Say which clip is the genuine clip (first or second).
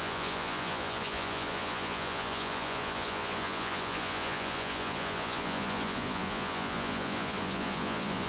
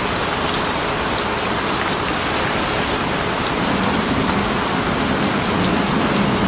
second